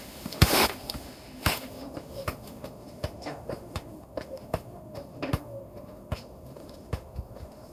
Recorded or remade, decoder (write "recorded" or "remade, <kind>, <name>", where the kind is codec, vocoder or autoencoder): remade, autoencoder, DAC-VAE